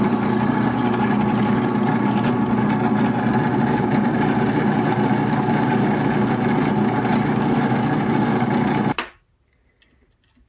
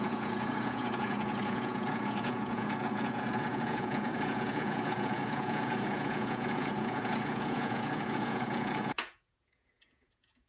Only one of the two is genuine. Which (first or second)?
first